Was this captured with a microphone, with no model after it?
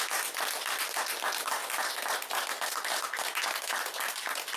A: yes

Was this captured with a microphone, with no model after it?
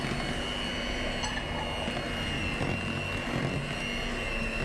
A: yes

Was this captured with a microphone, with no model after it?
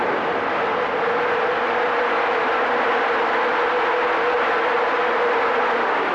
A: yes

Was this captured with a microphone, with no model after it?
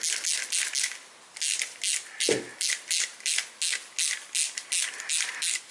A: yes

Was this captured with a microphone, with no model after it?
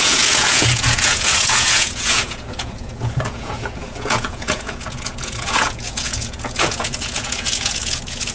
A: no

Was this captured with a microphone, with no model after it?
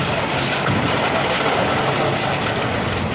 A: yes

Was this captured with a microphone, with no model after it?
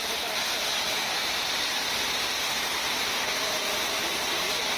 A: yes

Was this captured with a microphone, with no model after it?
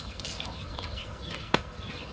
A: no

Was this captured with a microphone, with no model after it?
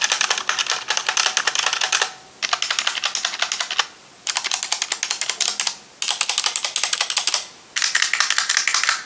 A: yes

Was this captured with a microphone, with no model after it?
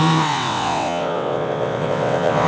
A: no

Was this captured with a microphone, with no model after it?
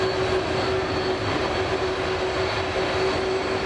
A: yes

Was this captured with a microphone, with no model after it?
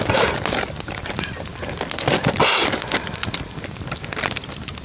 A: yes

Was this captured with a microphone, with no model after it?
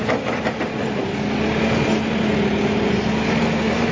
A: yes